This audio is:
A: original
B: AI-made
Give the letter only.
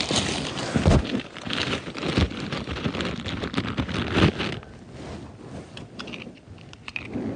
A